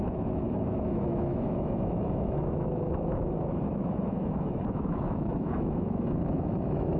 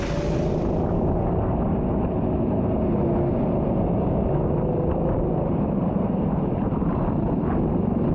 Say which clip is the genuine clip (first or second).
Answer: second